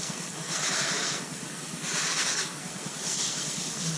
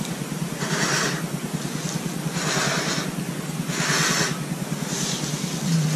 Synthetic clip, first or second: first